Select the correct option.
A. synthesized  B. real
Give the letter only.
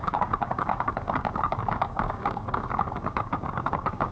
A